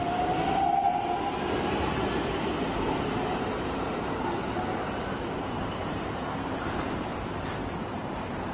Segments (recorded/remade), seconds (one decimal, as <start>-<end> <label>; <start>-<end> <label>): 0.0-3.9 recorded; 3.9-8.5 remade